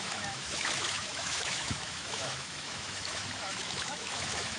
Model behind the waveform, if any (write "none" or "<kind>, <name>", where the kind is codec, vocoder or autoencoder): autoencoder, DAC-VAE